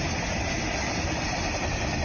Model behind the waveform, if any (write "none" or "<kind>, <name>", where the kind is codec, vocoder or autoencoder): none